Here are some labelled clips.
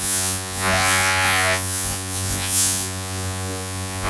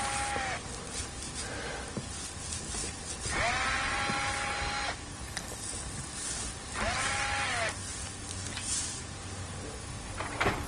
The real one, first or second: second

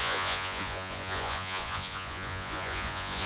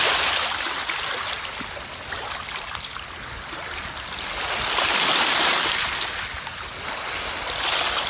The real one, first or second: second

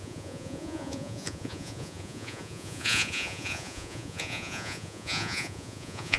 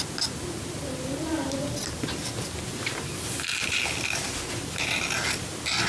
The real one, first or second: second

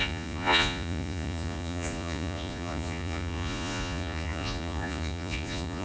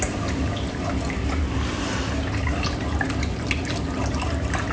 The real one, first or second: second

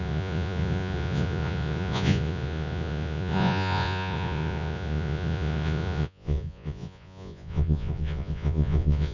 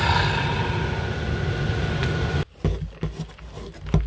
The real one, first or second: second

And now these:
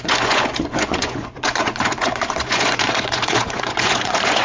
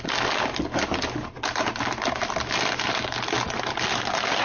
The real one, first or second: second